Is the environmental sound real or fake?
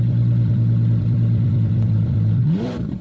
fake